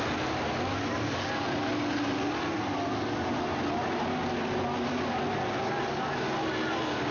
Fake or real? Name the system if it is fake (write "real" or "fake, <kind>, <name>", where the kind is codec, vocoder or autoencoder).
real